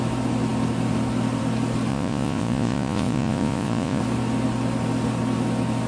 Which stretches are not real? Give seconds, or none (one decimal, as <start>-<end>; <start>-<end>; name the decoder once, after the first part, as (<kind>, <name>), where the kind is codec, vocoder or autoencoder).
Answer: 1.9-4.0 (vocoder, Vocos)